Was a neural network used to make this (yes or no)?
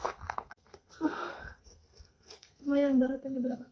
yes